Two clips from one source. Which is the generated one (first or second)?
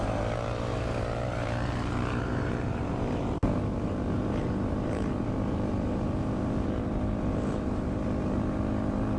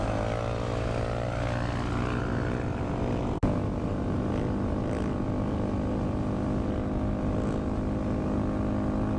first